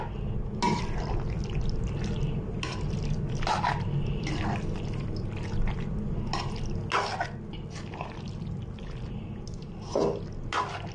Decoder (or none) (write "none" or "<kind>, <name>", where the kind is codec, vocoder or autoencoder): none